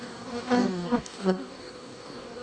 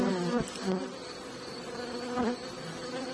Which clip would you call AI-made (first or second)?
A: first